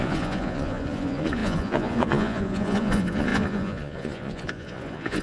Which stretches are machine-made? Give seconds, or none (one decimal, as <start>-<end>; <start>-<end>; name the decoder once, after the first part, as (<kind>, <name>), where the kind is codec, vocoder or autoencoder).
0.0-5.2 (vocoder, Vocos)